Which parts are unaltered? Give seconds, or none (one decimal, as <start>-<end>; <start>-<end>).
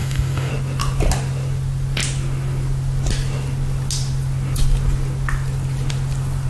0.5-6.5